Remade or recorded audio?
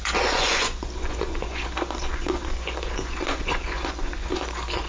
remade